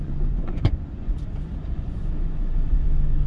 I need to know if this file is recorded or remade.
remade